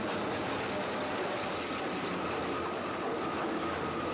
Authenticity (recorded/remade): recorded